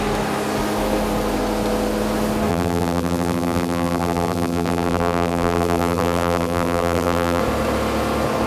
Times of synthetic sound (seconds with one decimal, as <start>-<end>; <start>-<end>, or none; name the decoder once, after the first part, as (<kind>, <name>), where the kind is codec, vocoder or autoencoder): 2.5-7.4 (vocoder, BigVGAN v2)